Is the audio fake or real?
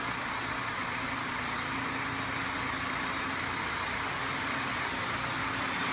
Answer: real